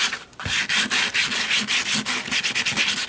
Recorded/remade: recorded